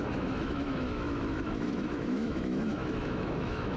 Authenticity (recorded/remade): remade